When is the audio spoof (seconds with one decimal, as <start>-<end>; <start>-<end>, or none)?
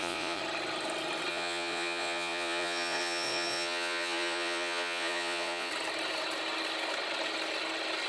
0.0-0.4; 1.3-5.7